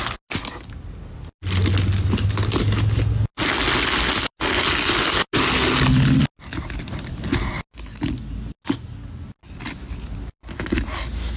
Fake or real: real